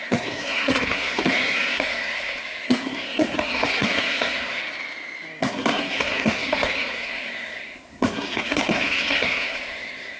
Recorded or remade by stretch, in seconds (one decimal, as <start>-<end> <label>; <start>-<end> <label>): 0.0-4.6 remade; 4.6-5.4 recorded; 5.4-10.2 remade